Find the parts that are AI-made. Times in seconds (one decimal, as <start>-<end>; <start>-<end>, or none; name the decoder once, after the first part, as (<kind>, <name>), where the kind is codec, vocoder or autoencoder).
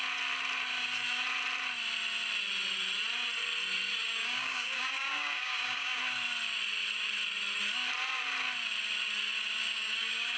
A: 4.0-6.0 (codec, DAC); 9.6-10.4